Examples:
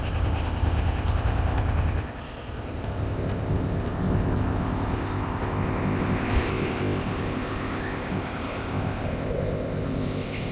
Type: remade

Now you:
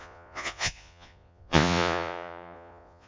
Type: remade